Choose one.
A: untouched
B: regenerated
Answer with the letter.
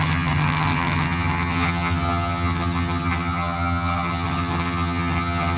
B